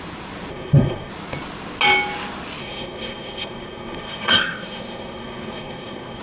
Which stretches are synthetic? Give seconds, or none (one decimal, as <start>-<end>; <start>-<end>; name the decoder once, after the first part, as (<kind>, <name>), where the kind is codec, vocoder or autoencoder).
0.5-1.1 (codec, SNAC); 2.6-6.2